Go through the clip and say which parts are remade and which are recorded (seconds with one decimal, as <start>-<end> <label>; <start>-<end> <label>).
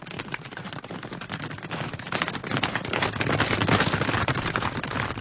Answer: 0.0-5.2 recorded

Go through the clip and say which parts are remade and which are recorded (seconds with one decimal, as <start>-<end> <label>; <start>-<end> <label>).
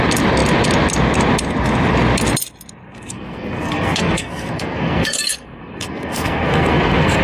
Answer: 0.0-2.8 recorded; 2.8-7.2 remade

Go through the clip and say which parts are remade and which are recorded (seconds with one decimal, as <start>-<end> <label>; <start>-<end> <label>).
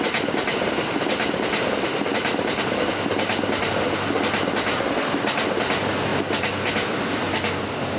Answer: 0.0-8.0 recorded